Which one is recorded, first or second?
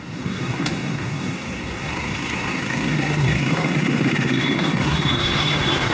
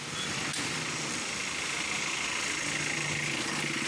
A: second